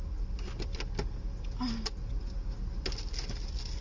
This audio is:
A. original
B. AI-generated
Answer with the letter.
A